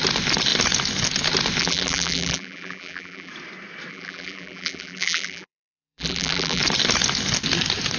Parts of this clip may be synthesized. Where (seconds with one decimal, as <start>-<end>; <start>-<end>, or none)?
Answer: 1.6-3.3; 3.9-6.6